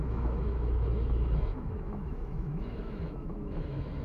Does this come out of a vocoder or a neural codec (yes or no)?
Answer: yes